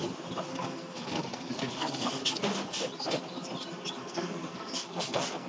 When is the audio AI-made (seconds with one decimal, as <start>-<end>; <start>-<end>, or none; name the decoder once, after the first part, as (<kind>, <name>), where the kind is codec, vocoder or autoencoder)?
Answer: 0.5-2.1 (codec, SNAC); 4.0-5.5